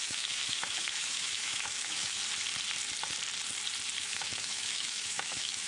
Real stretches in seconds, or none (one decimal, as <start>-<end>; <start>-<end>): 2.2-4.0